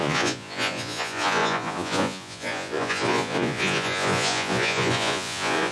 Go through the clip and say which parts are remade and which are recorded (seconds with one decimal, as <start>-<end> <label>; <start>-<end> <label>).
0.0-5.7 remade